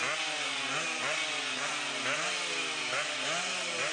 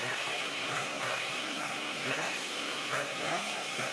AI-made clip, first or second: second